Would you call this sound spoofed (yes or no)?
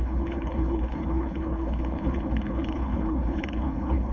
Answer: yes